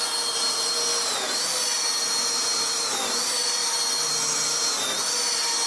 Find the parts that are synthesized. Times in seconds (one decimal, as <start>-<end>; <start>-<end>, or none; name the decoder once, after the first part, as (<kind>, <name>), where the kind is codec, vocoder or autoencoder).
none